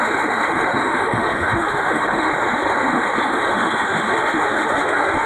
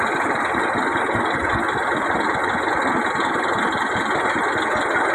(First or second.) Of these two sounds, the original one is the second